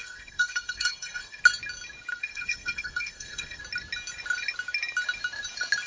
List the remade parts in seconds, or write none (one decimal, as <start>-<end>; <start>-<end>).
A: 0.0-1.4; 2.1-3.6